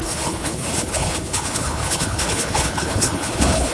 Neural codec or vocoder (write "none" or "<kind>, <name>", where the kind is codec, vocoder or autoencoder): codec, HILCodec